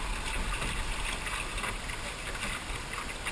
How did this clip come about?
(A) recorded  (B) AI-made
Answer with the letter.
A